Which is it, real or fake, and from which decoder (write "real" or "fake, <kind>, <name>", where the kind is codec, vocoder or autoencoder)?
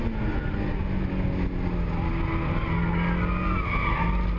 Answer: real